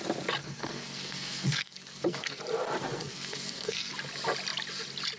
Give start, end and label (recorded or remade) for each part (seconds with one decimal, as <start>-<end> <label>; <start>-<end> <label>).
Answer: 0.0-0.4 recorded; 0.4-2.4 remade; 2.4-2.8 recorded; 2.8-3.9 remade; 3.9-5.2 recorded